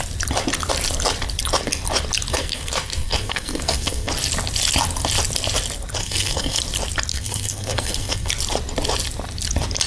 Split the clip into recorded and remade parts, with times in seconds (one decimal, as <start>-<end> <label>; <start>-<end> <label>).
0.0-2.3 recorded; 2.3-4.1 remade; 4.1-6.0 recorded; 6.0-6.6 remade; 6.6-7.1 recorded; 7.1-8.3 remade; 8.3-9.9 recorded